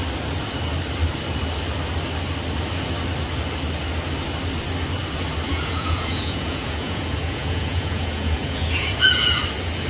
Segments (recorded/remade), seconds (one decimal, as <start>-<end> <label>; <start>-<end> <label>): 0.0-5.5 recorded; 5.5-9.4 remade; 9.4-9.9 recorded